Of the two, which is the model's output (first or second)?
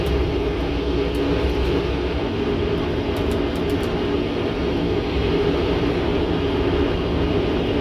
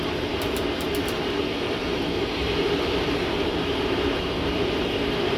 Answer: second